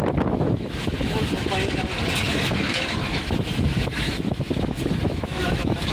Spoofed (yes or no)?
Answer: yes